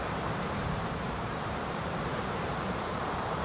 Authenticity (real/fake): fake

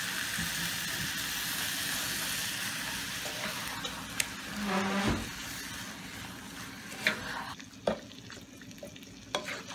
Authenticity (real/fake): real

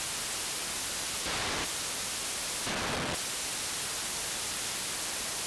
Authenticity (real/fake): real